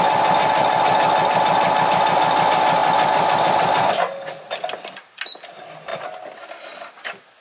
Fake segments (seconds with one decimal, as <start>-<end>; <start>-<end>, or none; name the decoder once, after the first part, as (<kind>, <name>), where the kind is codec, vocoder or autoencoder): none